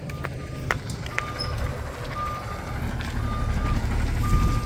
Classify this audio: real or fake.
real